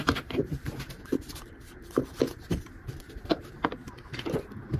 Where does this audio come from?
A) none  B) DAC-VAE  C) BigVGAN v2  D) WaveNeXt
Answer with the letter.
C